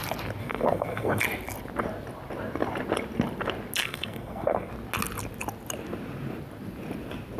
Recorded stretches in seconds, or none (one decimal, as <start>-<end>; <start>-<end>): 0.0-0.4; 1.2-3.8; 4.7-7.4